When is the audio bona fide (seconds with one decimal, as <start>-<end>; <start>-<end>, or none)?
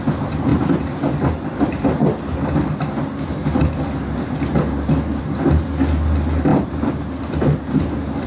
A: 0.0-6.5; 7.8-8.3